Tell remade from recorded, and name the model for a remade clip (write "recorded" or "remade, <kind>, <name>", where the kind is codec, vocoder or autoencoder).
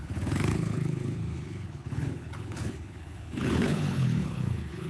remade, codec, HILCodec